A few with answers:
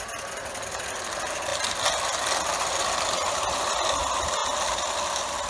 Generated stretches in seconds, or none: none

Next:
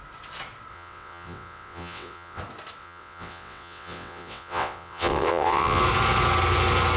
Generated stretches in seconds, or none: 0.7-2.4 (vocoder, WaveNeXt); 2.8-5.8

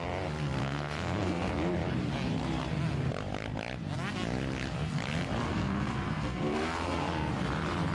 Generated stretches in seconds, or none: 0.6-1.5 (codec, SNAC); 5.5-7.3

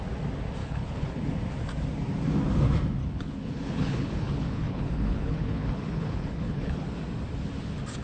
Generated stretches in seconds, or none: 0.6-1.2 (codec, HILCodec); 3.0-6.9

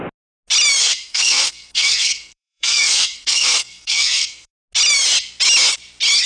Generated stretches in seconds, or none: 0.8-4.5 (codec, SNAC)

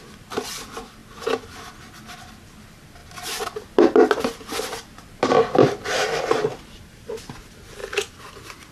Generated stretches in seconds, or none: 0.0-1.0 (vocoder, BigVGAN v2); 2.3-7.8

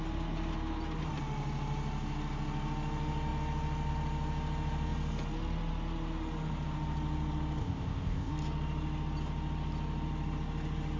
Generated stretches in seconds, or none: 7.6-8.3 (codec, ZipCodec)

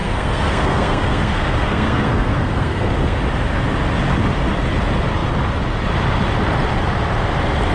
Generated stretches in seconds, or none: 0.0-3.2 (codec, SNAC)